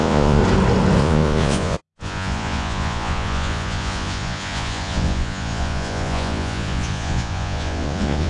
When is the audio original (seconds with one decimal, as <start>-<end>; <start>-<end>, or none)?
0.4-1.0